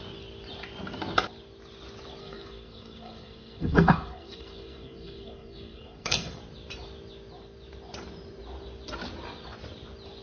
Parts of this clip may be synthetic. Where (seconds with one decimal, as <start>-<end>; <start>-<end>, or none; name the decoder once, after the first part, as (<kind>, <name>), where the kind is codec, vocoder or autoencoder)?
2.2-6.4 (codec, SNAC)